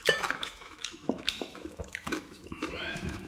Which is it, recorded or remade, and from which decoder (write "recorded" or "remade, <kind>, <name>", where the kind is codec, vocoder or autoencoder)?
remade, autoencoder, DAC-VAE